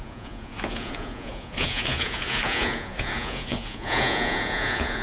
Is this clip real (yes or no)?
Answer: no